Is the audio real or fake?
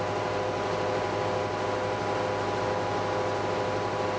real